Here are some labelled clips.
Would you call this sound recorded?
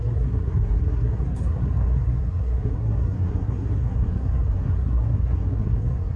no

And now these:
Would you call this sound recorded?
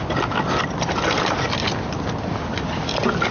yes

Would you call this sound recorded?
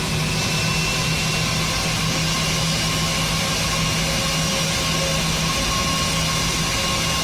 yes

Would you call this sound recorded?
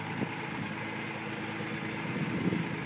yes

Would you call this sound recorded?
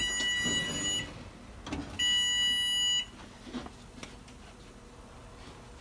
yes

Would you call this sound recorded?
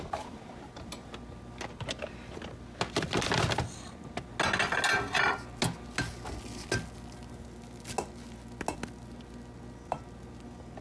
yes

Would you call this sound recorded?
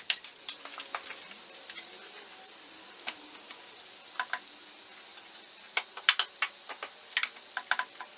yes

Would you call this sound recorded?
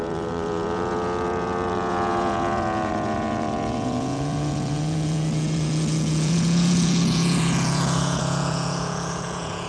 no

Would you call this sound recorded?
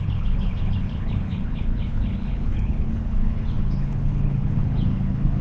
no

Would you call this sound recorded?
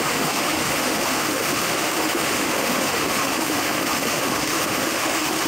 no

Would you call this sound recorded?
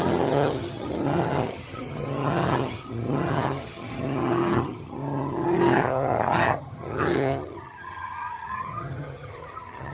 no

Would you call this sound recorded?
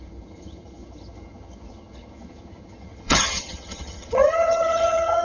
no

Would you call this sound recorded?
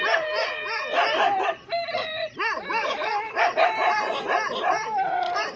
no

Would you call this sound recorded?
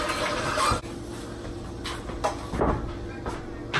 yes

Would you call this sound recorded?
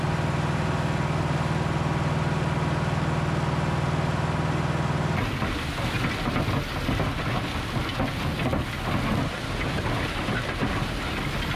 yes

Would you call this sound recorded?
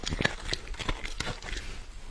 yes